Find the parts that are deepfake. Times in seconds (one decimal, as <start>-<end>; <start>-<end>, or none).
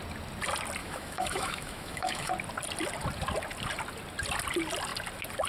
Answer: 0.8-2.3